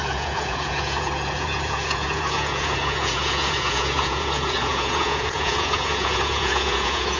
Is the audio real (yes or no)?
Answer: no